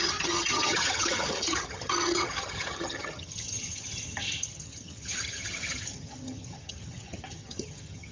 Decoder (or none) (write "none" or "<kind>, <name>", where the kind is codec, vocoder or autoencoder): vocoder, HiFi-GAN